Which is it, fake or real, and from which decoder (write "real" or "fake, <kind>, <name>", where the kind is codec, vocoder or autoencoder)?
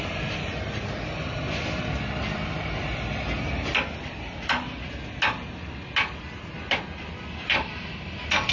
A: real